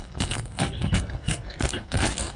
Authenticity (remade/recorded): remade